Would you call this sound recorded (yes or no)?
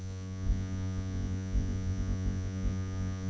no